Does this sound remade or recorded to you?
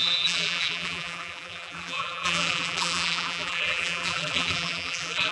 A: remade